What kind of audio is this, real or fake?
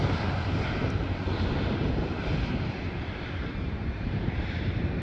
fake